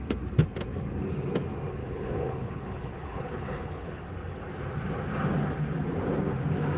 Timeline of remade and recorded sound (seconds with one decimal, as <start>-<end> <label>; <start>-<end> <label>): 0.0-1.8 recorded; 1.8-4.0 remade; 4.0-6.8 recorded